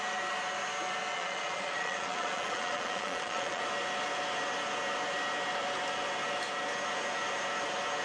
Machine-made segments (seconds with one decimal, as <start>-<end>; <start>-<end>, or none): 1.1-3.6